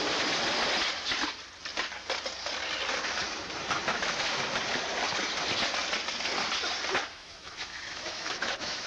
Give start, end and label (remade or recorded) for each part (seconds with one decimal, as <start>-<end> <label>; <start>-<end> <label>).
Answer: 0.0-3.9 recorded; 3.9-4.4 remade; 4.4-7.1 recorded; 7.1-8.9 remade